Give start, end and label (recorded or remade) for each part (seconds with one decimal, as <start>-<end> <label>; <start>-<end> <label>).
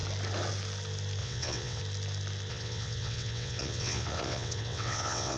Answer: 0.0-1.2 recorded; 1.2-1.8 remade; 1.8-2.5 recorded; 2.5-5.4 remade